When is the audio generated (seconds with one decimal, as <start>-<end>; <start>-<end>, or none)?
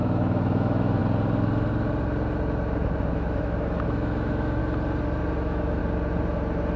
0.0-1.0; 3.1-4.6; 5.2-5.8